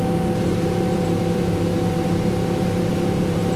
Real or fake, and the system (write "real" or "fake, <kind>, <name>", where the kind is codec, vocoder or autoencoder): fake, vocoder, BigVGAN v2